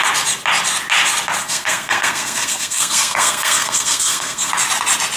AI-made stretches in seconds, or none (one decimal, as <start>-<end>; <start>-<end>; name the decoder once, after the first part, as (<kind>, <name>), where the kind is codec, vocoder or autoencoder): 1.4-4.5 (codec, SNAC)